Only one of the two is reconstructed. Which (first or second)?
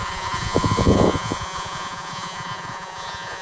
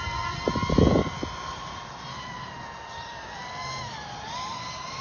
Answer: first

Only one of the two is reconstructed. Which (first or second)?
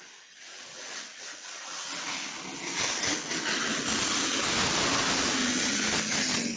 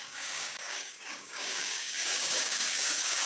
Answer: second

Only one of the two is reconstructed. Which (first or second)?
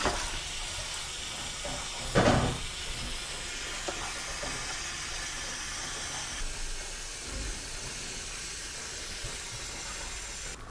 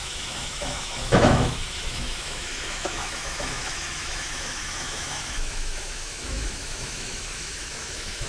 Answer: second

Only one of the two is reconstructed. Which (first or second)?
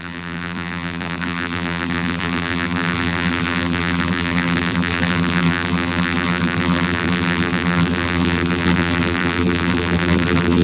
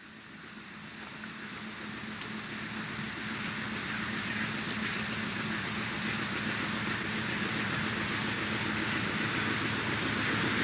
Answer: first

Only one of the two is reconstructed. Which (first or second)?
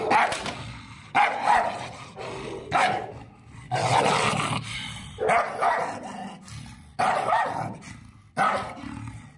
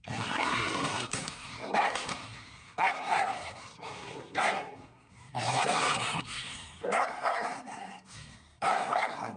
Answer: second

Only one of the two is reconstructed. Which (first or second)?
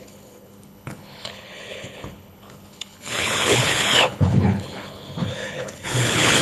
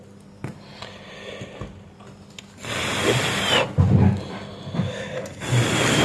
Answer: first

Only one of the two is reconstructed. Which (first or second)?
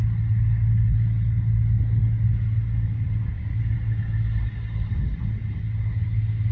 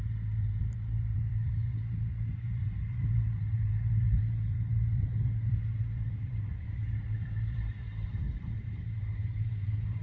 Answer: second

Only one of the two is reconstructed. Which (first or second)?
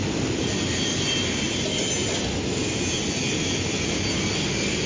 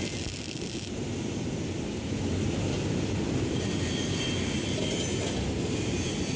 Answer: second